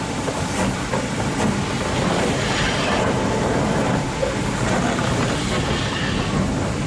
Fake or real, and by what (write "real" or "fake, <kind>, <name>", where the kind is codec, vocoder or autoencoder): real